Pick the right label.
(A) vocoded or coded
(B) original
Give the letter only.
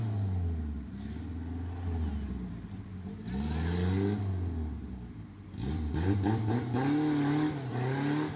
B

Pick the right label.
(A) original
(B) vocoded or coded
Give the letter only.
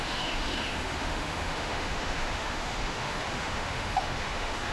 B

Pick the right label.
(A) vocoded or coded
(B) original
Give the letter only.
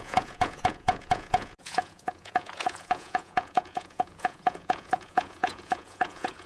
A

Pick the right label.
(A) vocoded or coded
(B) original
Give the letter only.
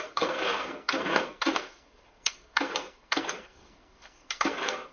A